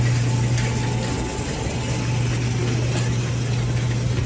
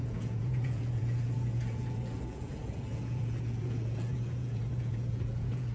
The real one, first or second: first